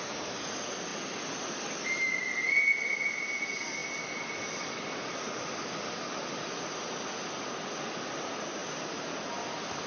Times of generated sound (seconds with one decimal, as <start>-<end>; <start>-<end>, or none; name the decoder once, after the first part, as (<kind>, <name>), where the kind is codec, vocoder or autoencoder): 8.6-9.1 (vocoder, BigVGAN v2)